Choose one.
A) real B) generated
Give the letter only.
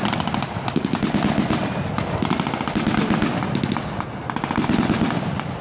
A